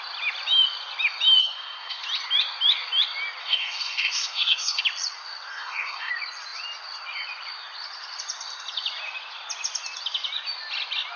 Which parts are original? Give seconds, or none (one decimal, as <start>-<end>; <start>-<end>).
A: 0.0-1.4; 2.0-3.4; 4.8-5.5; 6.1-11.2